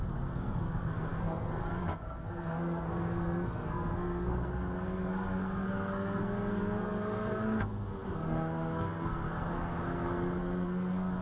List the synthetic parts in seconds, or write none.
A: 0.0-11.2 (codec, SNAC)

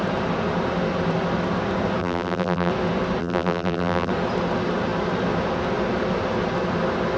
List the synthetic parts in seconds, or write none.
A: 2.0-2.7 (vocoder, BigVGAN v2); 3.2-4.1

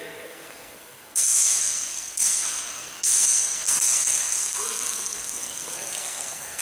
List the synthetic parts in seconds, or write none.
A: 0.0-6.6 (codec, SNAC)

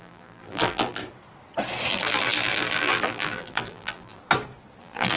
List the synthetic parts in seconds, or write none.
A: 0.0-1.0 (vocoder, BigVGAN v2); 1.9-4.2; 4.8-5.2

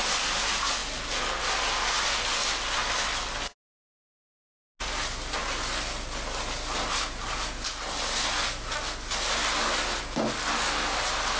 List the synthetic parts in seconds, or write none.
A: none

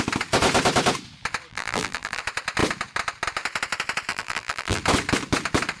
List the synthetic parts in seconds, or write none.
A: 1.5-2.2 (vocoder, BigVGAN v2); 4.1-4.8

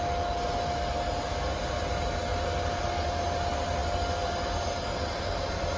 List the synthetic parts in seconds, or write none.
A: none